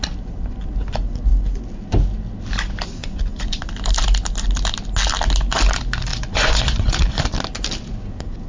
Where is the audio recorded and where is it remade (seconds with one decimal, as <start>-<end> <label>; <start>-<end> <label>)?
0.0-3.0 recorded; 3.0-3.6 remade; 3.6-6.1 recorded; 6.1-7.0 remade; 7.0-8.5 recorded